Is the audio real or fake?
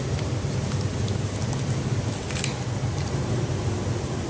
real